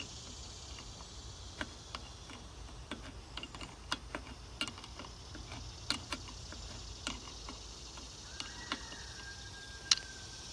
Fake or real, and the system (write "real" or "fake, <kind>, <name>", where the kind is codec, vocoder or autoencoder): real